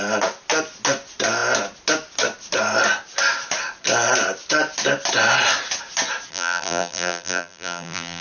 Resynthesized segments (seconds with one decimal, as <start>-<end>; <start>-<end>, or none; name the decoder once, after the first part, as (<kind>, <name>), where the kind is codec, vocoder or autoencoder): 6.3-8.2 (vocoder, BigVGAN v2)